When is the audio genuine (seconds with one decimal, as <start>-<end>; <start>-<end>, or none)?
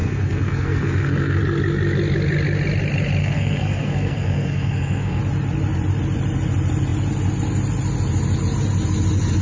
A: 1.4-3.2; 5.2-9.4